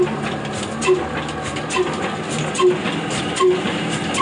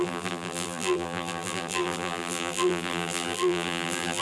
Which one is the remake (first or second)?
second